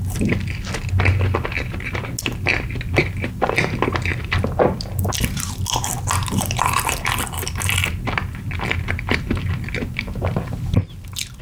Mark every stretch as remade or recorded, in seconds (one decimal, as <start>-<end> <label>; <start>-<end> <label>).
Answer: 0.0-4.1 recorded; 4.1-5.6 remade; 5.6-11.4 recorded